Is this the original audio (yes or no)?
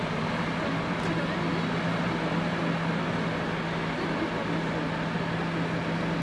yes